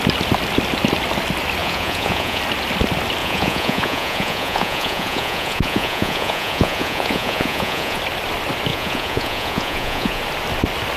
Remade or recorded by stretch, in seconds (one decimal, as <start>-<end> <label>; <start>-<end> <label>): 0.0-1.6 recorded; 1.6-2.4 remade; 2.4-3.2 recorded; 3.2-8.0 remade; 8.0-8.7 recorded; 8.7-10.2 remade; 10.2-11.0 recorded